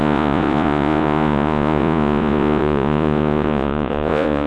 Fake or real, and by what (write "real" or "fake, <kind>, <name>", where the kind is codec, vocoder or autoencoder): fake, vocoder, Vocos